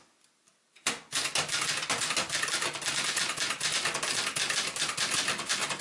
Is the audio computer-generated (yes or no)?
no